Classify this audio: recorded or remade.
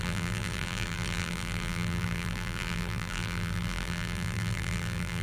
remade